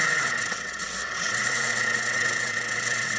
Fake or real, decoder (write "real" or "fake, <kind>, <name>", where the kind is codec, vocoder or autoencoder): fake, vocoder, WaveNeXt